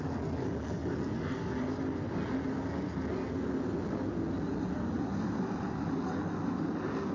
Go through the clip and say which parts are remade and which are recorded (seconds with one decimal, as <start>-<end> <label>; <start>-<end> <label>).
0.0-7.1 recorded